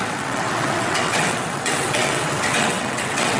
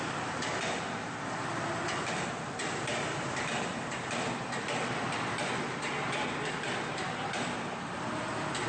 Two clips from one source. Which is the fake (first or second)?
first